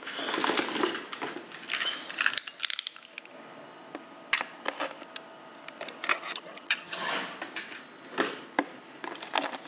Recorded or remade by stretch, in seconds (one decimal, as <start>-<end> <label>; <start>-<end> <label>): 0.0-6.1 recorded; 6.1-7.1 remade; 7.1-9.7 recorded

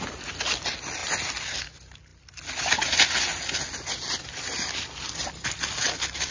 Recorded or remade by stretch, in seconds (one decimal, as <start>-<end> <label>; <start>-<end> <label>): 0.0-6.3 recorded

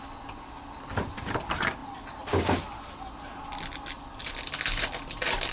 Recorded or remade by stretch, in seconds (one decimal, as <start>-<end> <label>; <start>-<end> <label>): 0.0-5.5 recorded

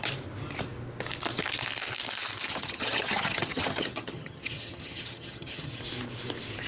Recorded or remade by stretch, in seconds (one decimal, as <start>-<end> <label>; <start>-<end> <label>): 0.0-2.5 recorded; 2.5-5.8 remade; 5.8-6.7 recorded

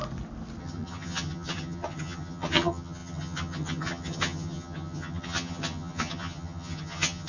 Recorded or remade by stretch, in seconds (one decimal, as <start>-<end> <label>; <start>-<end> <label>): 0.0-0.6 recorded; 0.6-7.3 remade

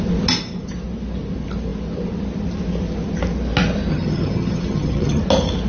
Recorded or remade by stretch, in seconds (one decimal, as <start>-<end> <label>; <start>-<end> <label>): 0.0-3.9 recorded; 3.9-5.2 remade; 5.2-5.7 recorded

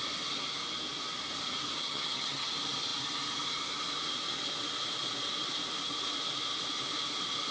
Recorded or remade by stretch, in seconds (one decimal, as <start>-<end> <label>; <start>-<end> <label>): 0.0-1.8 recorded; 1.8-2.5 remade; 2.5-7.5 recorded

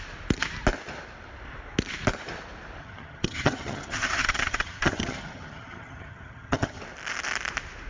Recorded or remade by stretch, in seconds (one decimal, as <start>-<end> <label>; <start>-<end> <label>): 0.0-2.8 recorded; 2.8-6.8 remade; 6.8-7.9 recorded